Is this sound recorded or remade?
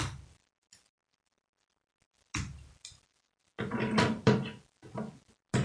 recorded